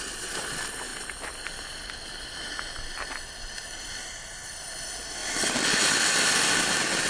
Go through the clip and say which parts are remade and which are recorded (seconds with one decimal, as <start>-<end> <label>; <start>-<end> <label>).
0.0-7.1 recorded